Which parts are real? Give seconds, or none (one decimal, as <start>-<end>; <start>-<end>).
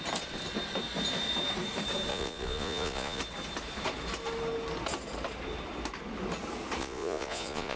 0.0-2.1; 3.2-6.8